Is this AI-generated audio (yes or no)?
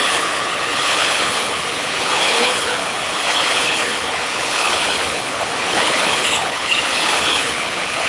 yes